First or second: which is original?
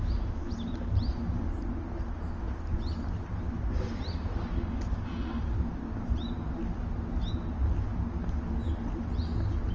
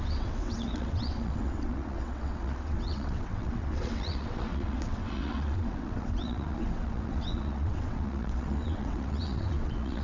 first